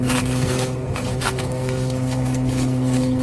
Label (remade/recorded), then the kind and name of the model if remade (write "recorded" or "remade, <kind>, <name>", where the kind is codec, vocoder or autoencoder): remade, codec, SNAC